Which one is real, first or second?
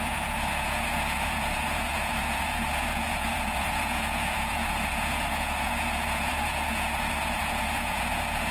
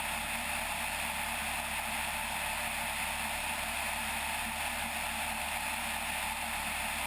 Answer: second